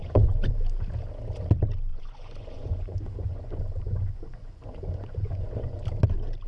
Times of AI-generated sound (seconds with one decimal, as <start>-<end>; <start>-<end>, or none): 0.0-0.5; 1.9-5.8